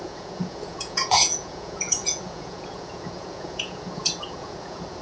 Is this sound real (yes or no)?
no